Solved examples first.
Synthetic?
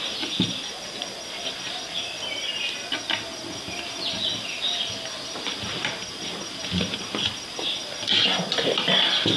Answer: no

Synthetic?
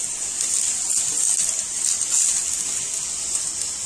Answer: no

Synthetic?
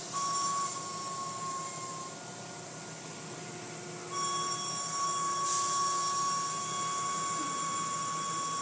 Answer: no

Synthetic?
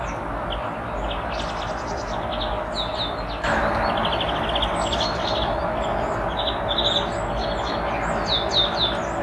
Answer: no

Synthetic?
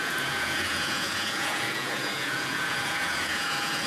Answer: yes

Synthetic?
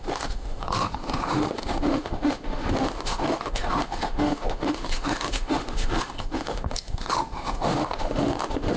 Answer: yes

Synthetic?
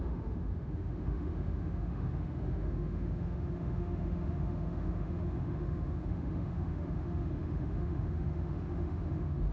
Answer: yes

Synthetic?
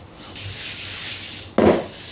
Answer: no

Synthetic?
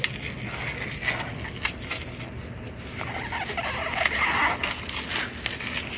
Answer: no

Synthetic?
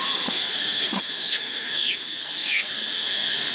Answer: yes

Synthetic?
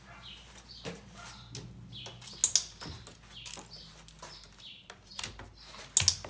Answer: no